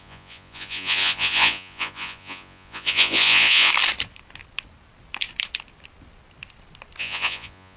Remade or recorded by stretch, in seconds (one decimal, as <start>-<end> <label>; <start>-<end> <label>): 0.0-3.7 remade; 3.7-7.0 recorded; 7.0-7.8 remade